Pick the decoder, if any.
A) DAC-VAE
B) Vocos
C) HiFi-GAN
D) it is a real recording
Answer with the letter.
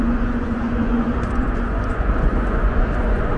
B